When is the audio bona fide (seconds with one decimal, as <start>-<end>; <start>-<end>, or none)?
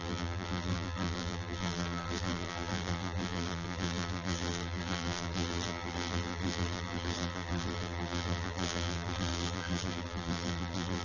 none